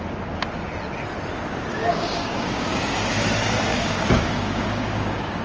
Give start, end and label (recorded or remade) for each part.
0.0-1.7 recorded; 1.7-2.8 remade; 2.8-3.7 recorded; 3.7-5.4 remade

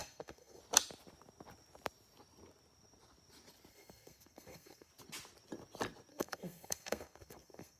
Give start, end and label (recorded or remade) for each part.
0.0-0.6 remade; 0.6-3.7 recorded; 3.7-4.9 remade; 4.9-6.1 recorded; 6.1-7.8 remade

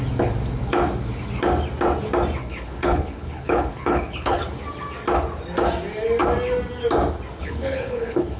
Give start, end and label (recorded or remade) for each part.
0.0-2.4 recorded; 2.4-4.4 remade; 4.4-7.4 recorded; 7.4-8.4 remade